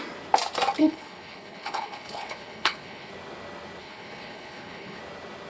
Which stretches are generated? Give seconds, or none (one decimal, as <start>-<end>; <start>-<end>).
0.8-3.1; 3.8-5.0